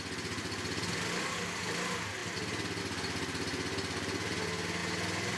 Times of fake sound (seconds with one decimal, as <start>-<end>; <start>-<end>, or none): none